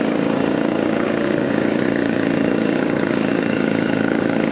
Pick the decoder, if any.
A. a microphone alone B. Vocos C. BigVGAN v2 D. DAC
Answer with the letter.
D